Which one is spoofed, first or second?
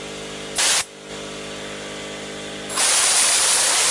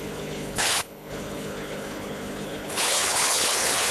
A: second